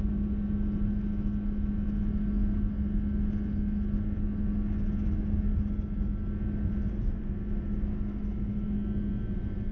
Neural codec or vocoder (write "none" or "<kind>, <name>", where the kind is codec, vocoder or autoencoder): none